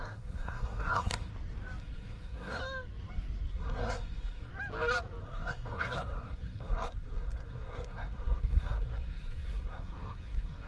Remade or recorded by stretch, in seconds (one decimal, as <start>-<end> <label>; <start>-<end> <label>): 0.0-1.3 remade; 1.3-1.8 recorded; 1.8-2.6 remade; 2.6-3.5 recorded; 3.5-4.5 remade; 4.5-5.2 recorded; 5.2-10.7 remade